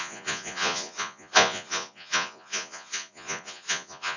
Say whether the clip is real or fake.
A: fake